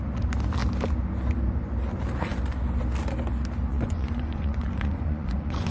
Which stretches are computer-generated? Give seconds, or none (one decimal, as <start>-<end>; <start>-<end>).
3.7-5.7